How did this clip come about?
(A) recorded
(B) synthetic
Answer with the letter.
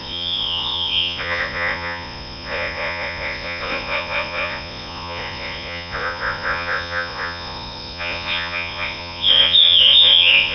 B